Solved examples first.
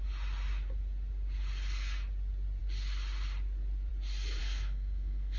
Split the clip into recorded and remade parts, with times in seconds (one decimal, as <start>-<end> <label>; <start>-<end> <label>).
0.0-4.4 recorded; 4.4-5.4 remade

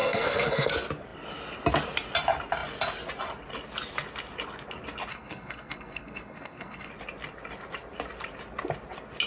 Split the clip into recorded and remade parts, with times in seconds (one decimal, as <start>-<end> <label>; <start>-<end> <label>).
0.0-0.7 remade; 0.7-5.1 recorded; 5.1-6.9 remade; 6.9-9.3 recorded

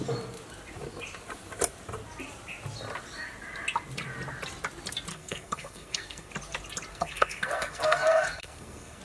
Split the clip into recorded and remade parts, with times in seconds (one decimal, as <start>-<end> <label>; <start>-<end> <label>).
0.0-5.1 recorded; 5.1-6.3 remade; 6.3-6.9 recorded; 6.9-9.0 remade

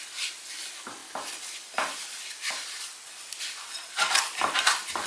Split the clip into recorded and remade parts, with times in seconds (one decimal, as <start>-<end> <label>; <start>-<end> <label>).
0.0-5.1 recorded